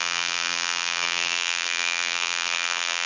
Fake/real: fake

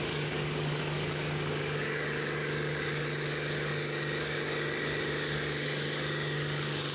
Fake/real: fake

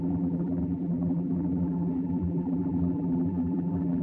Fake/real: fake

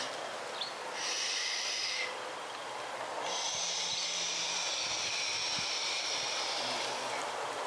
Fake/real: real